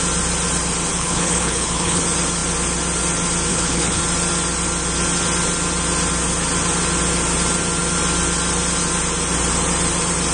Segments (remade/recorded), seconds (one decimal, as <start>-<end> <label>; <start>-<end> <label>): 0.0-0.9 recorded; 0.9-2.0 remade; 2.0-3.5 recorded; 3.5-4.0 remade; 4.0-10.3 recorded